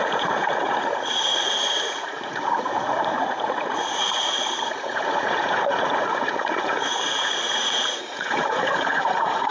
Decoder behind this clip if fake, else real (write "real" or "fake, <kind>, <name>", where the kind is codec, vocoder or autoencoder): fake, vocoder, Vocos